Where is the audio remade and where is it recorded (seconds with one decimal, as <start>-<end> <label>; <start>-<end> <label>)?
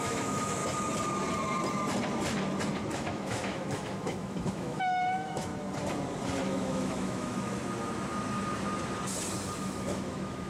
0.0-0.6 remade; 0.6-2.9 recorded; 2.9-5.5 remade; 5.5-6.4 recorded; 6.4-7.6 remade; 7.6-9.6 recorded; 9.6-10.5 remade